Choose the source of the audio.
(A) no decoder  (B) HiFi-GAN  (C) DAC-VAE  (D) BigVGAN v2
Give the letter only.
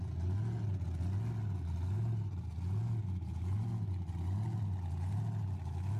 A